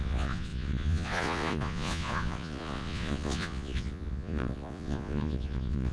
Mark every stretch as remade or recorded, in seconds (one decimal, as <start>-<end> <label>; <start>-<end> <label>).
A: 0.0-5.9 remade